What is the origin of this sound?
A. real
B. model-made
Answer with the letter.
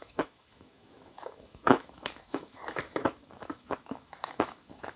B